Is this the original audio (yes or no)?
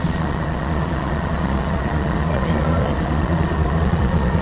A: no